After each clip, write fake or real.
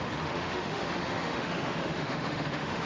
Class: fake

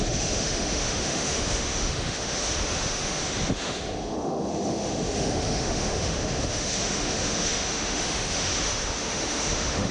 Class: fake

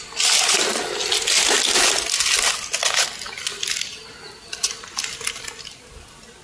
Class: real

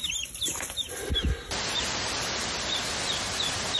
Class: real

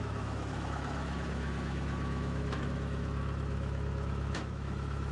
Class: fake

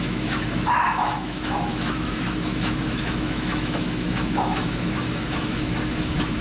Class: fake